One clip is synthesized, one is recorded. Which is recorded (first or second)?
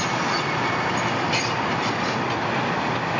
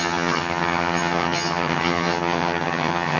first